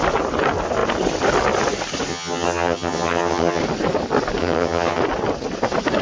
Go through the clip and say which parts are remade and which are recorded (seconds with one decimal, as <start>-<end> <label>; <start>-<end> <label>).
0.0-2.1 recorded; 2.1-3.6 remade; 3.6-4.4 recorded; 4.4-5.0 remade; 5.0-6.0 recorded

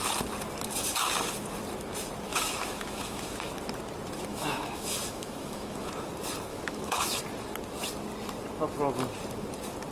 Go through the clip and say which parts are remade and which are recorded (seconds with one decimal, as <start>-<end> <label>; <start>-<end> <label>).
0.0-2.3 recorded; 2.3-3.3 remade; 3.3-4.3 recorded; 4.3-5.9 remade; 5.9-6.5 recorded; 6.5-7.2 remade; 7.2-9.9 recorded

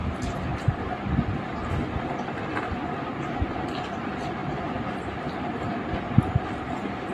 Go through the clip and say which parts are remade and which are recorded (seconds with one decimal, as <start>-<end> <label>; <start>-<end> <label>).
0.0-0.8 remade; 0.8-7.1 recorded